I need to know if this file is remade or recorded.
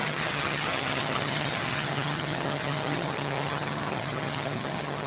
remade